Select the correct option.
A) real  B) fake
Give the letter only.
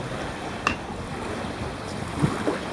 A